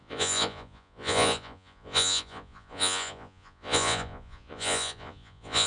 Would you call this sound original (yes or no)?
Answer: no